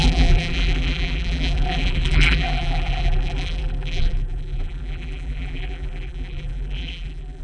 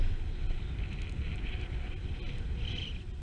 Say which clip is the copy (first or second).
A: first